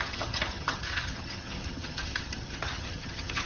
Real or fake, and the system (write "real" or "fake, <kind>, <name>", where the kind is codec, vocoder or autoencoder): fake, vocoder, HiFi-GAN